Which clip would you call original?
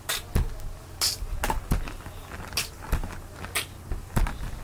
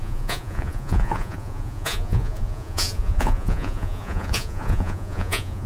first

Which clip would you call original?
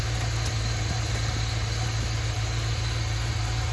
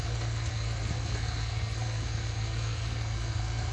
first